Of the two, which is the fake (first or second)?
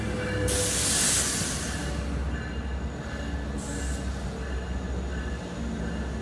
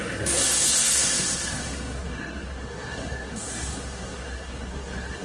second